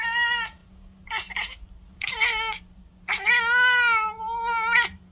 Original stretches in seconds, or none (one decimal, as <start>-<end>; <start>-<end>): 0.0-5.1